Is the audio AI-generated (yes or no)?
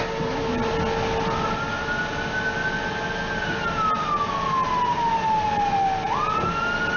no